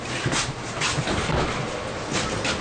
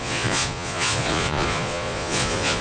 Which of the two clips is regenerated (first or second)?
second